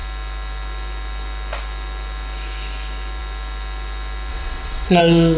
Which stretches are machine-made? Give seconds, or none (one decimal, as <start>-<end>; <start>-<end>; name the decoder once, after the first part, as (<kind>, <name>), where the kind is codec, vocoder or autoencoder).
4.3-5.0 (vocoder, WaveNeXt)

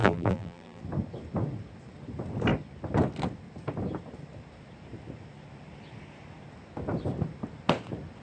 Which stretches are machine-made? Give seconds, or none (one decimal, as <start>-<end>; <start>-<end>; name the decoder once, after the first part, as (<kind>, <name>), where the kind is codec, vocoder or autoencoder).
0.0-0.8 (vocoder, BigVGAN v2)

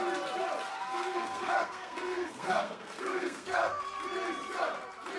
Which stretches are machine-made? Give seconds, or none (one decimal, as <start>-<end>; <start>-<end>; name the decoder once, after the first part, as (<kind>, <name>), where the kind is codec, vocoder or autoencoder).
0.7-3.8 (codec, SNAC)

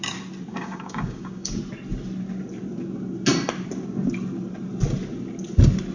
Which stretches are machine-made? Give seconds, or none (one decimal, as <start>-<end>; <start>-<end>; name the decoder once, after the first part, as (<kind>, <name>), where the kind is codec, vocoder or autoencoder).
0.5-1.6 (codec, DAC)

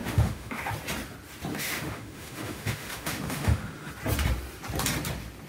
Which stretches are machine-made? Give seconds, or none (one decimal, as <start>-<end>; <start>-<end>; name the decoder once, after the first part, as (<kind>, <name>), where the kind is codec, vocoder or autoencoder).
0.0-0.7 (autoencoder, DAC-VAE); 1.5-3.9

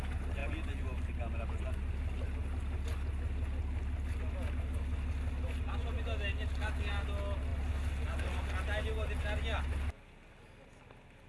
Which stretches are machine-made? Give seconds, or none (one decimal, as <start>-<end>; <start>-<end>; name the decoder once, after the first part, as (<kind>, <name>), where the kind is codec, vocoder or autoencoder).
none

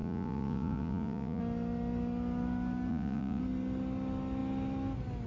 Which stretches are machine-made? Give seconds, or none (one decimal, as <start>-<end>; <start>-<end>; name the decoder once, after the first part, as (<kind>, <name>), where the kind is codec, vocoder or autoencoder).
0.0-1.4 (vocoder, Vocos); 2.9-3.4

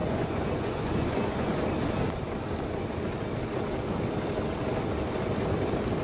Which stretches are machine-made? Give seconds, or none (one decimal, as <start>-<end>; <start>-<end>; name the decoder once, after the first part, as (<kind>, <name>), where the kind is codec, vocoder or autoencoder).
0.0-1.6 (vocoder, Vocos)